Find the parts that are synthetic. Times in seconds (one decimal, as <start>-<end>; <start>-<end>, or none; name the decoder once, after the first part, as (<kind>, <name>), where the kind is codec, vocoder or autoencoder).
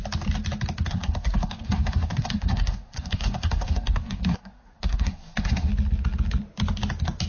0.9-5.7 (codec, SNAC)